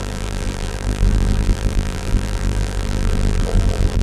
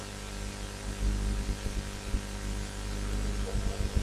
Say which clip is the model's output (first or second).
first